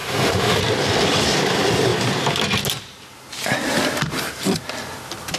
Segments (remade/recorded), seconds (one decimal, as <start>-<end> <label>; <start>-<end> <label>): 0.0-0.6 remade; 0.6-5.4 recorded